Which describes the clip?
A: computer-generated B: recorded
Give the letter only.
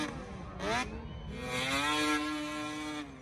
B